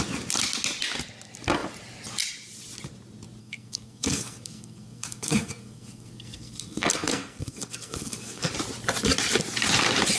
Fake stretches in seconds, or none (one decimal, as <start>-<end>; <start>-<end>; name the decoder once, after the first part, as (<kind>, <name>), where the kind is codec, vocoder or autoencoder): 3.4-8.5 (codec, SNAC)